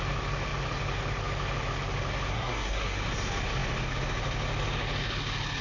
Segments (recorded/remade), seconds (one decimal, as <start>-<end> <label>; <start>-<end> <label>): 0.0-2.3 recorded; 2.3-3.0 remade; 3.0-5.6 recorded

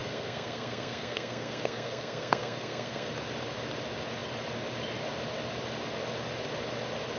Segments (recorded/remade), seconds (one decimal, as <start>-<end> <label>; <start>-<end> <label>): 0.0-3.1 remade; 3.1-7.2 recorded

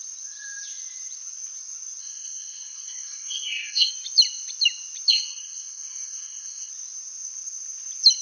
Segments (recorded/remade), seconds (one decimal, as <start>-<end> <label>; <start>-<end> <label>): 0.0-2.0 recorded; 2.0-3.9 remade; 3.9-5.1 recorded; 5.1-6.7 remade; 6.7-8.2 recorded

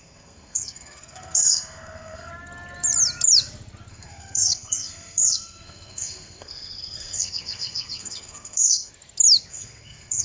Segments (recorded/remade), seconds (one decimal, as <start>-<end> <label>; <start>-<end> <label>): 0.0-2.3 remade; 2.3-3.9 recorded; 3.9-8.9 remade; 8.9-9.5 recorded; 9.5-10.2 remade

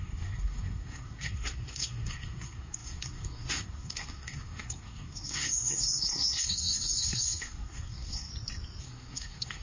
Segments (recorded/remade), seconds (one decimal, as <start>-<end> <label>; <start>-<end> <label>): 0.0-8.3 remade; 8.3-8.8 recorded; 8.8-9.6 remade

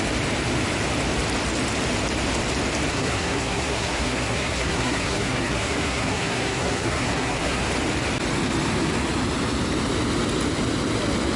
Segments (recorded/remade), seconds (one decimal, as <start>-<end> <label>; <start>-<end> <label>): 0.0-2.9 recorded; 2.9-7.6 remade; 7.6-11.4 recorded

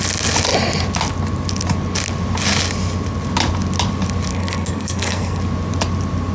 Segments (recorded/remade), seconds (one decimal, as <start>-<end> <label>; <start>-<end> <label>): 0.0-4.3 recorded; 4.3-5.4 remade; 5.4-6.3 recorded

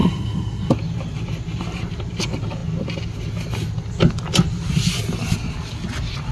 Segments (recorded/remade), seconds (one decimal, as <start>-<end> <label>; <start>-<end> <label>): 0.0-0.7 remade; 0.7-6.3 recorded